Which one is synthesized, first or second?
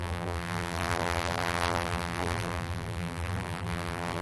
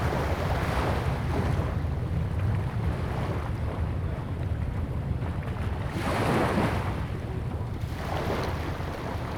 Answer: first